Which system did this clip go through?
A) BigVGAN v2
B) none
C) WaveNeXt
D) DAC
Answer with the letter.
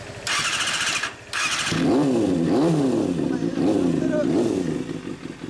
B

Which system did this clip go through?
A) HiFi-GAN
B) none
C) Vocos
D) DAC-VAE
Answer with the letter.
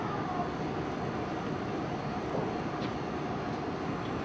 B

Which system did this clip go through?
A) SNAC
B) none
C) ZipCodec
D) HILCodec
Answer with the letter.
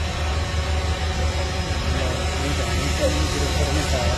B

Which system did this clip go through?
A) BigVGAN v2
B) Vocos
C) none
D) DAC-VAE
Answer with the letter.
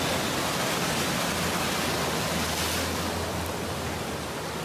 C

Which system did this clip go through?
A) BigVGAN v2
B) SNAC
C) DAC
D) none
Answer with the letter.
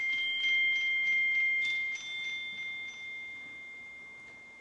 D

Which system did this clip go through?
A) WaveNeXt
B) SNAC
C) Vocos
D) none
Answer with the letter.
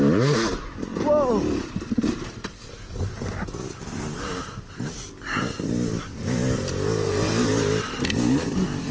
D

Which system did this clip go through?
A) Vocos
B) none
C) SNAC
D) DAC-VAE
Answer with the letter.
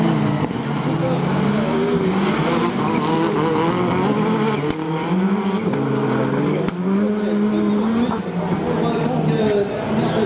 B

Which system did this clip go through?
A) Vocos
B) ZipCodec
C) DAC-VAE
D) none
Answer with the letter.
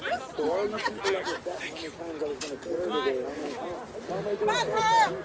D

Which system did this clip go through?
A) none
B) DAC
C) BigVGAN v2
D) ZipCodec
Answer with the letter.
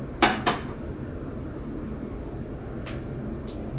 A